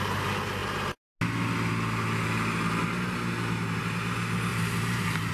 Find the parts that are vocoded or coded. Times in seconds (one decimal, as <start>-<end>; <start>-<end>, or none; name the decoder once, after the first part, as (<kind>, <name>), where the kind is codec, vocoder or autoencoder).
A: 4.5-5.3 (vocoder, BigVGAN v2)